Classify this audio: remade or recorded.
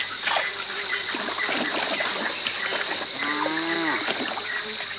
recorded